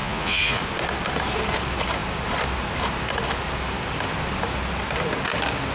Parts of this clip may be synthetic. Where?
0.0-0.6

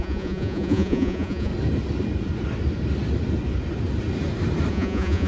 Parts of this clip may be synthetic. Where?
0.0-1.5; 4.7-5.3

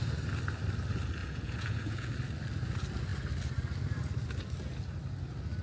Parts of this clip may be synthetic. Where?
1.2-2.1

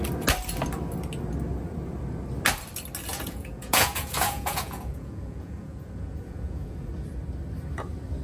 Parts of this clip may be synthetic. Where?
3.1-6.9

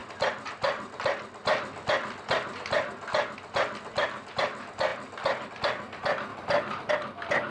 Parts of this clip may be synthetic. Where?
none

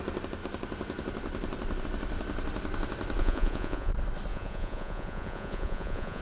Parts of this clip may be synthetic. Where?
3.2-3.9; 4.3-6.2

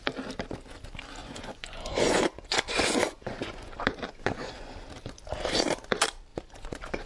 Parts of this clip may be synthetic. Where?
1.2-4.7; 6.3-7.1

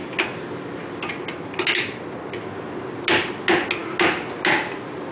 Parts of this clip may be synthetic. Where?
none